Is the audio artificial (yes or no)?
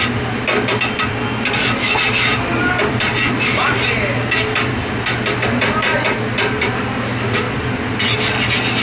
no